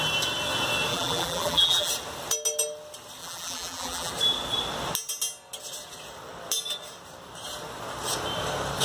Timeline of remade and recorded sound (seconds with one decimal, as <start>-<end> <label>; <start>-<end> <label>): 0.0-0.9 recorded; 0.9-1.9 remade; 1.9-3.2 recorded; 3.2-4.1 remade; 4.1-8.8 recorded